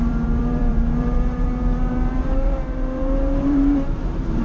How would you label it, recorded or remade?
remade